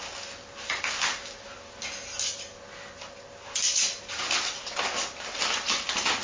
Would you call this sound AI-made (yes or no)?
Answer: no